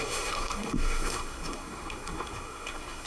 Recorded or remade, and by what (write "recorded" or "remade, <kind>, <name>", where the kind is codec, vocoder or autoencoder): remade, codec, SNAC